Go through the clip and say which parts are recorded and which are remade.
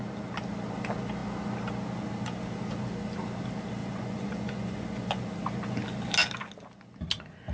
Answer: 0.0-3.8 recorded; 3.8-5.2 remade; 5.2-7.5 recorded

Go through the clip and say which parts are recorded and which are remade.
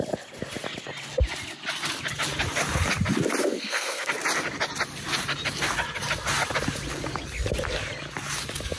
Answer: 0.0-3.4 recorded; 3.4-4.1 remade; 4.1-8.8 recorded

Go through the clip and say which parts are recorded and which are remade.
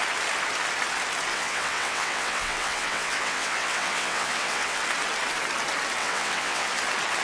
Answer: 0.0-1.3 recorded; 1.3-4.8 remade; 4.8-6.0 recorded; 6.0-6.7 remade; 6.7-7.2 recorded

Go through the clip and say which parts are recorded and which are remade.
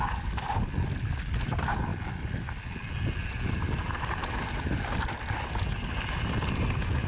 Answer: 0.0-7.1 recorded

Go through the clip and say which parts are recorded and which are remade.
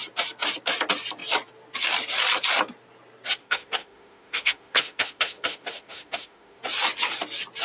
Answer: 0.0-3.4 recorded; 3.4-6.6 remade; 6.6-7.6 recorded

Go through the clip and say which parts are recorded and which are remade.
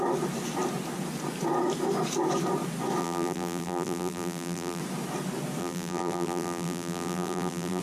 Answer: 0.0-3.0 recorded; 3.0-4.8 remade; 4.8-5.6 recorded; 5.6-7.8 remade